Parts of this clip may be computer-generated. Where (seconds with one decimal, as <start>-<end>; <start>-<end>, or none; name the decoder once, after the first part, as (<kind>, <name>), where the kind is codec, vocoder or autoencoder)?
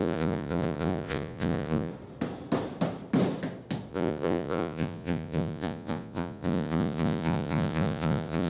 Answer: 0.0-1.9 (vocoder, Vocos); 3.9-8.5